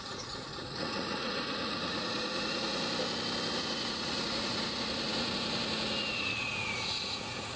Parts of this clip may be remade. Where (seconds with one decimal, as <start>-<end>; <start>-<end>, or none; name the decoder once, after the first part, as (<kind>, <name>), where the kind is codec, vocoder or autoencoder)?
0.0-2.8 (vocoder, Vocos); 3.5-7.6